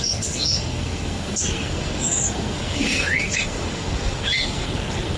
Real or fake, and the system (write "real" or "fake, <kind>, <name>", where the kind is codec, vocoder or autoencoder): fake, codec, SNAC